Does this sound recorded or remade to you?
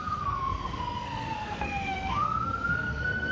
remade